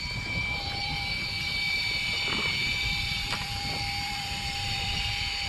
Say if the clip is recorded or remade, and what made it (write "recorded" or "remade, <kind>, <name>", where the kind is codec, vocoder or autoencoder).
remade, vocoder, BigVGAN v2